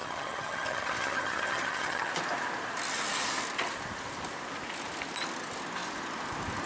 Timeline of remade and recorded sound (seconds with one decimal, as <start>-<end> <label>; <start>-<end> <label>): 0.0-2.1 remade; 2.1-6.7 recorded